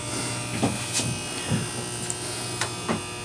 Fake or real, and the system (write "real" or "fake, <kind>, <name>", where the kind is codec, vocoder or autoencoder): real